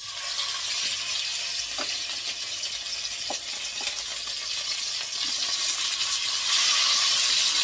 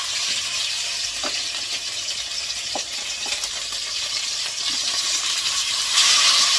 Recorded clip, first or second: first